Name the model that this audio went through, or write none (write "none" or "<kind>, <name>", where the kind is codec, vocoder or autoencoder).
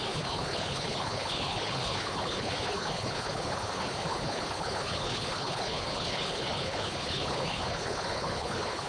codec, HILCodec